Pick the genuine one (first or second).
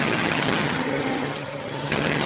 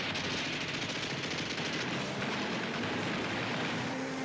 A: second